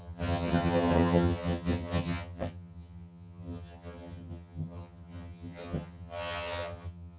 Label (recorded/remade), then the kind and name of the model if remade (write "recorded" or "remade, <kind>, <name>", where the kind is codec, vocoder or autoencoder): remade, vocoder, HiFi-GAN